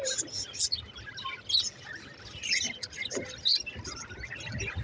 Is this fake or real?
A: real